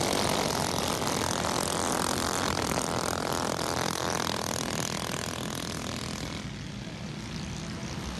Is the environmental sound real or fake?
real